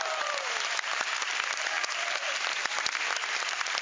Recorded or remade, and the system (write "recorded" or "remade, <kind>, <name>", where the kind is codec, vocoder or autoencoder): remade, vocoder, BigVGAN v2